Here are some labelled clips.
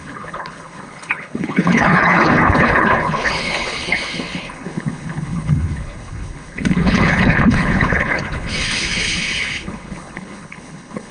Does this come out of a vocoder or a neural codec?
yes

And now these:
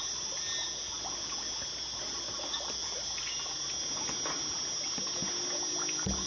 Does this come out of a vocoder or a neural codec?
no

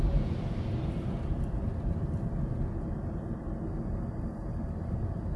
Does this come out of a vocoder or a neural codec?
no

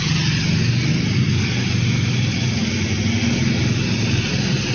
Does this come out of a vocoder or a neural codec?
no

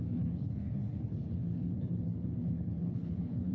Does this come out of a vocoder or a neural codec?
yes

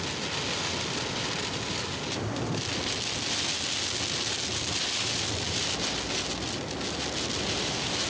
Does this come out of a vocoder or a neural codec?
no